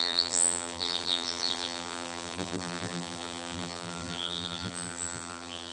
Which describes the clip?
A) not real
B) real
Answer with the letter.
A